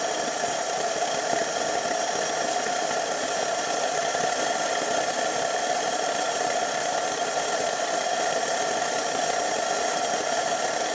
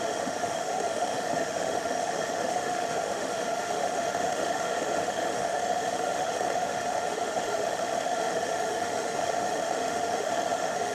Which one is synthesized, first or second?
second